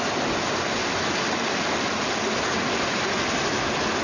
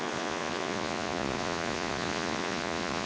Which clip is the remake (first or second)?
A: second